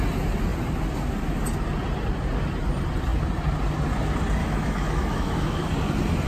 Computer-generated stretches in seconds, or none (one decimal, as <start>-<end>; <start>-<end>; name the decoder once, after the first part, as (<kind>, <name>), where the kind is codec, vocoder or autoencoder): 4.4-5.7 (autoencoder, DAC-VAE)